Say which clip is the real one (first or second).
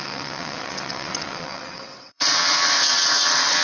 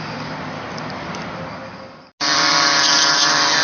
second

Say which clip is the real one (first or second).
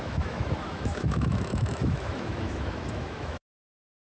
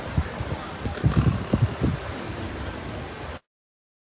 second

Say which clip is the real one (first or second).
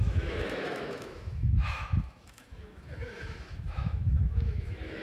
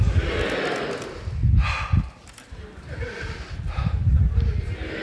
second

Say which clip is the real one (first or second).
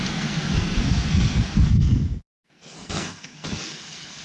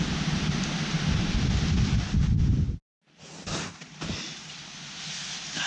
second